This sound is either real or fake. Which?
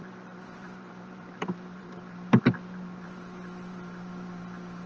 fake